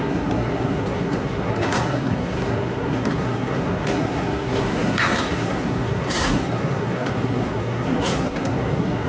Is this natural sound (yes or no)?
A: no